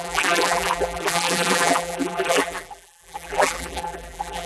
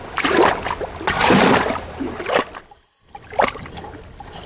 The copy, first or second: first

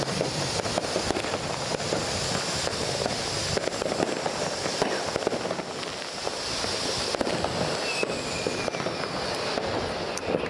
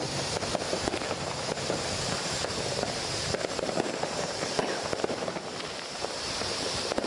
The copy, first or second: second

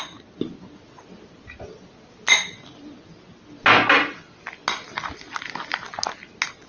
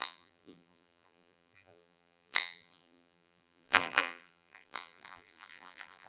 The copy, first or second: second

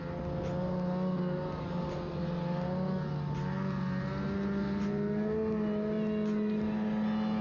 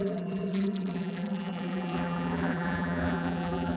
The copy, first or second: second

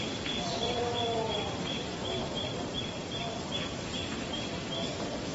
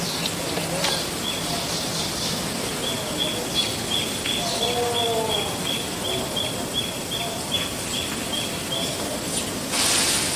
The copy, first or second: first